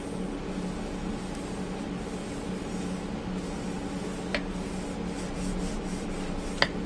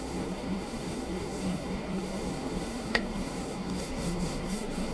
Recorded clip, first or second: first